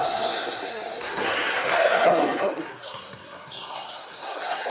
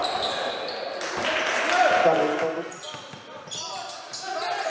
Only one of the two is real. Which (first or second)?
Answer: second